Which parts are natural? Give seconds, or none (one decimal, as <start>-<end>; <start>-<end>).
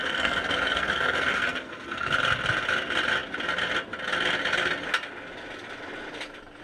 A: 2.1-6.6